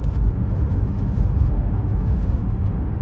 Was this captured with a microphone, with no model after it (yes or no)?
no